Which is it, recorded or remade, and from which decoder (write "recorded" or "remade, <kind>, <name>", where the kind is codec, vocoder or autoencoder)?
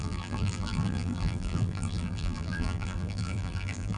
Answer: remade, vocoder, BigVGAN v2